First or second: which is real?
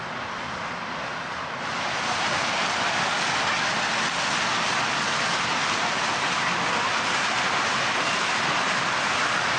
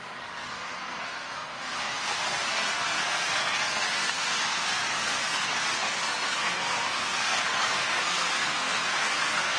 first